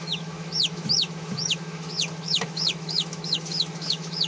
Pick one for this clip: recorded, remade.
remade